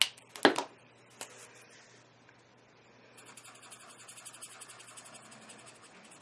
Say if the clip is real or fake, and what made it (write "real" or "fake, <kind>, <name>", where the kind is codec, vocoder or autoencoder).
real